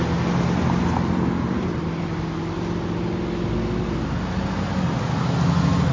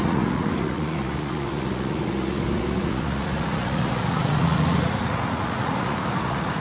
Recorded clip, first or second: first